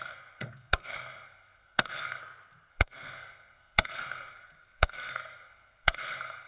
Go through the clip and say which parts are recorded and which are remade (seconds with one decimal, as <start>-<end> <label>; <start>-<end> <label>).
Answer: 0.0-2.2 remade; 2.2-2.7 recorded; 2.7-6.5 remade